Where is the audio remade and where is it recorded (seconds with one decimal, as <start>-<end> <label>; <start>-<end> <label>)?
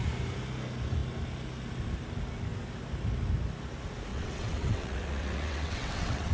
0.0-4.1 recorded; 4.1-6.3 remade